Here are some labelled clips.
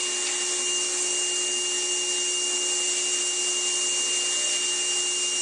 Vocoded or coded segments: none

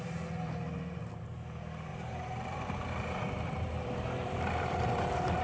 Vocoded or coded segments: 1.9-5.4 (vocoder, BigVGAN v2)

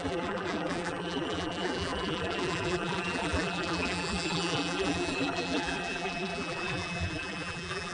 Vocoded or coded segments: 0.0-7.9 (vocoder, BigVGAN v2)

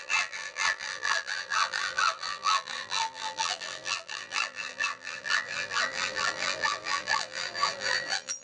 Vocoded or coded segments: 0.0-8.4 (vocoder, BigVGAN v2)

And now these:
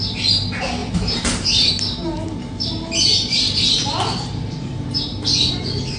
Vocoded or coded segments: 0.8-1.7 (vocoder, BigVGAN v2); 3.1-5.3